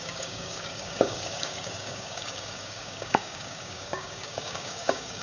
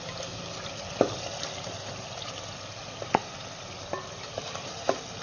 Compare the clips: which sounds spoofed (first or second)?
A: first